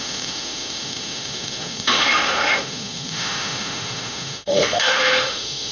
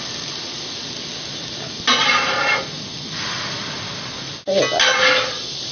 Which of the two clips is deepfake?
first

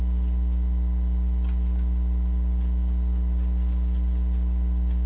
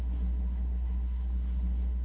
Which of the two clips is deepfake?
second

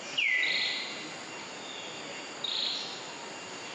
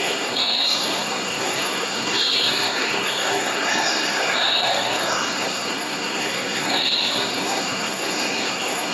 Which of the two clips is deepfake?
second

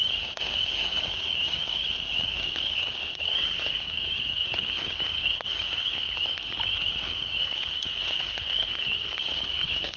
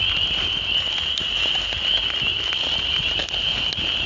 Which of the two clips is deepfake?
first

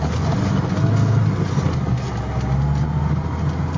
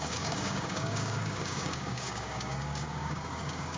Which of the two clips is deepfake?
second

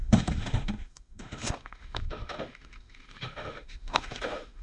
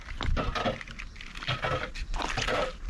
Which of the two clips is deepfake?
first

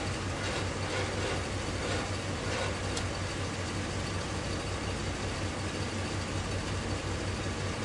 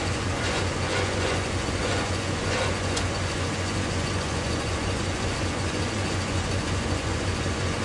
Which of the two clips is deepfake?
second